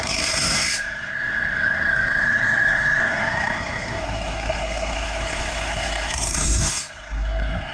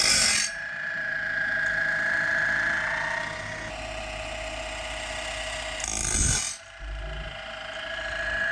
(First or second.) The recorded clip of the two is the second